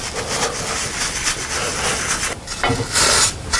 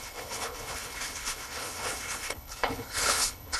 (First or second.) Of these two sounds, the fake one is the second